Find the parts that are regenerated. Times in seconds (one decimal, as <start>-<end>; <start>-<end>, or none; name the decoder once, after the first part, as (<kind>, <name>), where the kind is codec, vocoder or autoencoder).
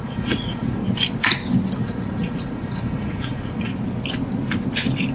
0.0-0.8 (vocoder, Vocos); 1.8-3.7